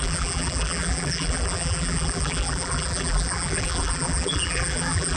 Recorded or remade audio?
remade